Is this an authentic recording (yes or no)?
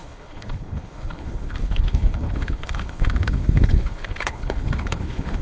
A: no